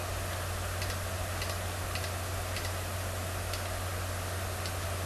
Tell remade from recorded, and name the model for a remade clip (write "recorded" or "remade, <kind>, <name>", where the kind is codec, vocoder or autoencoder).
recorded